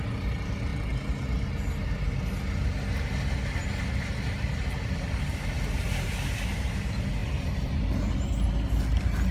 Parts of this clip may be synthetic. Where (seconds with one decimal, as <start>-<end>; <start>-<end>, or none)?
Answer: none